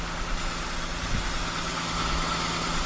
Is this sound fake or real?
real